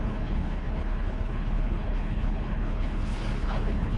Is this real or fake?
fake